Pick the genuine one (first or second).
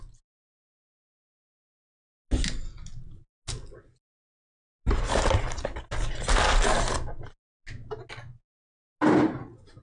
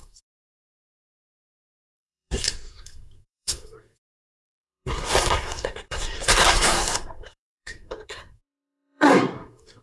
first